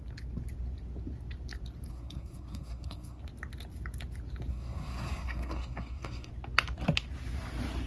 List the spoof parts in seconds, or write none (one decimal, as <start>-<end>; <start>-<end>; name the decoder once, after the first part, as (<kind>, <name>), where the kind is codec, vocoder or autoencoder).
1.9-3.2 (codec, SNAC); 4.5-6.3